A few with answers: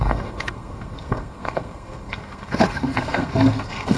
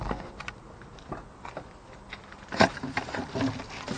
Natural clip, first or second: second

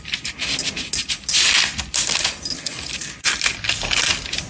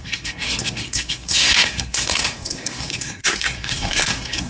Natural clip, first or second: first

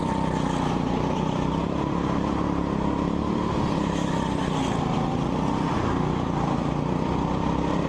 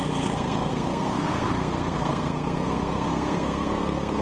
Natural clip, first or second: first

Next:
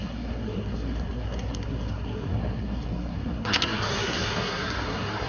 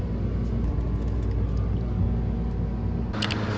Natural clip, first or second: second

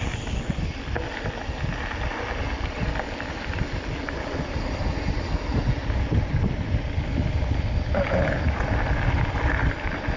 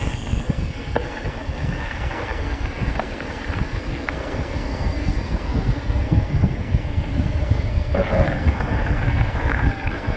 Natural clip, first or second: first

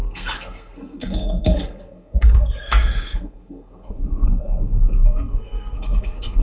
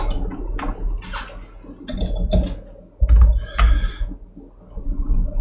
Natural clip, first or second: second